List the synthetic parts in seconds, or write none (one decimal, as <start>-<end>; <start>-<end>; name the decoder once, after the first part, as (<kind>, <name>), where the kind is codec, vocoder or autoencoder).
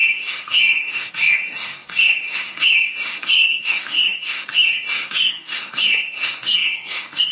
0.0-7.3 (codec, SNAC)